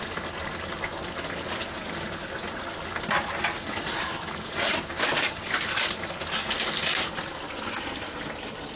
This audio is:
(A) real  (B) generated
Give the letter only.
A